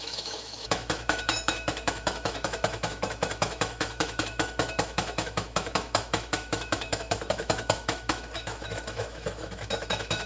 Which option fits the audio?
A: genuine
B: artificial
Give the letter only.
B